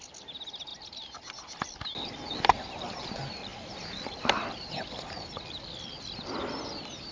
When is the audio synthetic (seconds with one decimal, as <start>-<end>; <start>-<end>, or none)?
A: 0.7-2.7; 3.5-6.6